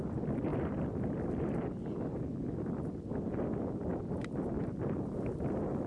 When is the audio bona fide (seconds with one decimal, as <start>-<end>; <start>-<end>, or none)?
0.0-5.9